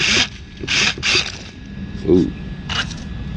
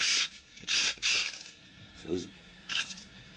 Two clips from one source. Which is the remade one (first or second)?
second